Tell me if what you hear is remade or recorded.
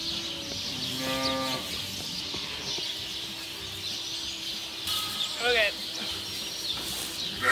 recorded